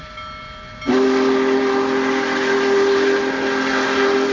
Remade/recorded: recorded